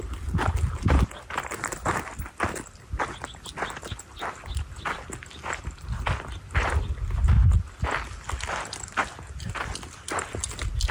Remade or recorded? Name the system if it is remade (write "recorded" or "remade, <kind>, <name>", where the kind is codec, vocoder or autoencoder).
recorded